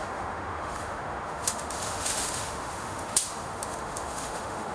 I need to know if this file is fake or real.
fake